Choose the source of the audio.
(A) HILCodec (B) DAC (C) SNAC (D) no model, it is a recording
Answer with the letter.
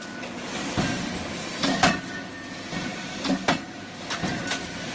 D